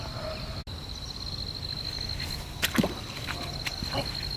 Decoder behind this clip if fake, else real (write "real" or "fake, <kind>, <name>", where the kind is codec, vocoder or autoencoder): real